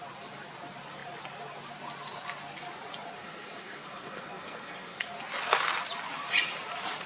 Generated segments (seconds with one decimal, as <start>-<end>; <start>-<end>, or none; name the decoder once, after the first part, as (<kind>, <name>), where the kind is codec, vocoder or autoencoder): 3.2-5.1 (codec, SNAC)